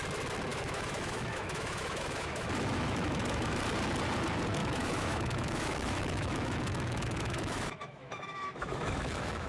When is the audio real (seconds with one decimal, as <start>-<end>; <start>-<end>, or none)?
0.0-0.5; 3.6-4.6